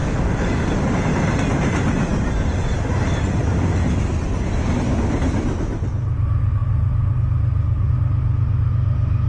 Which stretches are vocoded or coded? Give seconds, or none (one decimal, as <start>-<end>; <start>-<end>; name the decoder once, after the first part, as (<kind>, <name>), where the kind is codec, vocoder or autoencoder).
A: 0.0-0.7 (codec, DAC)